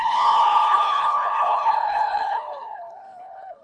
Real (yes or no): no